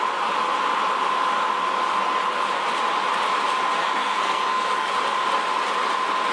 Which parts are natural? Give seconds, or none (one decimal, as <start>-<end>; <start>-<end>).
0.0-3.8; 4.9-6.3